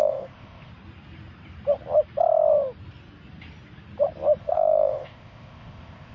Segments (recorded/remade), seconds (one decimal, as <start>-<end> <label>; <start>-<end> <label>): 0.0-0.7 remade; 0.7-4.4 recorded; 4.4-6.1 remade